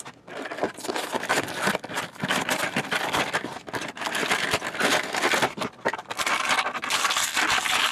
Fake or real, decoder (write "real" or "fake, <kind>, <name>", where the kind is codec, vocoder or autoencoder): real